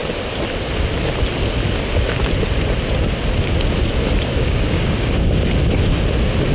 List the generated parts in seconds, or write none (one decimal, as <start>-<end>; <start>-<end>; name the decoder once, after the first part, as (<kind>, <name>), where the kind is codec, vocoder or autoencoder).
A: 4.3-5.7 (codec, DAC)